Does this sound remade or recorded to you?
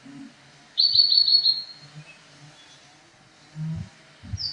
recorded